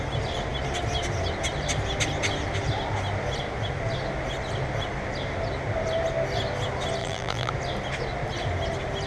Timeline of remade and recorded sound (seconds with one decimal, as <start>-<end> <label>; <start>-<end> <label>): 0.0-7.0 recorded; 7.0-7.5 remade; 7.5-9.1 recorded